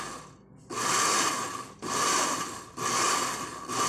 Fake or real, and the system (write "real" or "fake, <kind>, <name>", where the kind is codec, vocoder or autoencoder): real